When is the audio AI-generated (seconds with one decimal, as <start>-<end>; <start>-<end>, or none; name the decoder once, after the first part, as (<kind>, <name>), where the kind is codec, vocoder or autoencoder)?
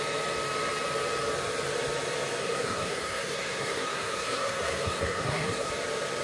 2.4-5.7 (codec, SNAC)